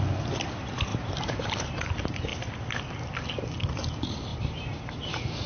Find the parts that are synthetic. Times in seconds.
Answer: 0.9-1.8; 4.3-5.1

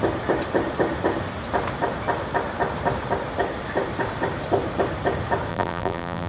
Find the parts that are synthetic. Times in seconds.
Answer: 5.5-6.3

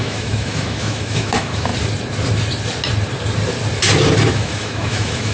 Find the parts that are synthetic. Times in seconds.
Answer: 0.0-1.7; 4.3-5.3

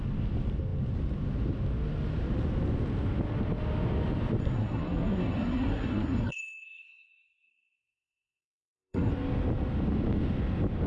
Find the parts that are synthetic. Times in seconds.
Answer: 4.4-9.1

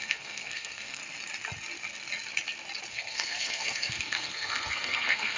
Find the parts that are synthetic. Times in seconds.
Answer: 0.0-1.0; 2.9-5.4

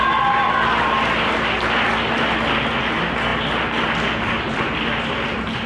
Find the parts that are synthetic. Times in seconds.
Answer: none